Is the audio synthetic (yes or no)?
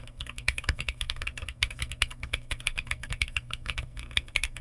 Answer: yes